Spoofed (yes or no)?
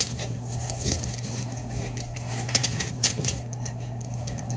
yes